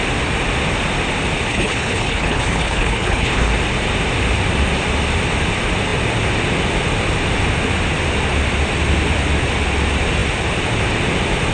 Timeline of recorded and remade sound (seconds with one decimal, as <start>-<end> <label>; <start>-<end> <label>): 0.0-1.5 recorded; 1.5-3.5 remade; 3.5-11.5 recorded